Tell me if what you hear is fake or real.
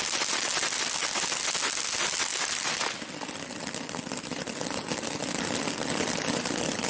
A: real